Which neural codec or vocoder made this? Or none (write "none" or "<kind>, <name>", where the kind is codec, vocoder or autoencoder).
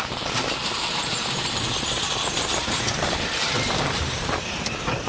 vocoder, BigVGAN v2